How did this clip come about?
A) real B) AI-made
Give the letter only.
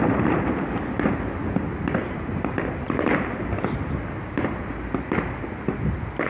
A